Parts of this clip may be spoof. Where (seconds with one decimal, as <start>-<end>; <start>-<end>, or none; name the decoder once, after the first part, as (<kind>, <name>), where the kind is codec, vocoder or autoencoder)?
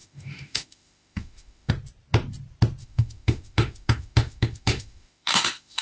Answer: 0.0-1.7 (autoencoder, DAC-VAE); 2.8-5.8